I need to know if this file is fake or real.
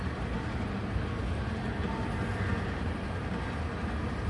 real